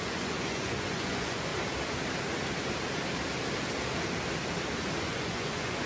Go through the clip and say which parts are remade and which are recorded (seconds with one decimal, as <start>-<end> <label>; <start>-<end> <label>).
0.0-1.5 remade; 1.5-5.0 recorded; 5.0-5.9 remade